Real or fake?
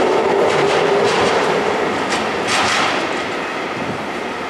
fake